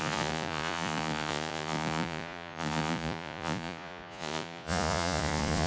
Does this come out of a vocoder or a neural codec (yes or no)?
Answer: yes